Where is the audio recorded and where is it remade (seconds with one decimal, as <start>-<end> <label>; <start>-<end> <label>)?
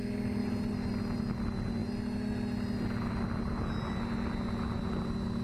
0.0-5.4 recorded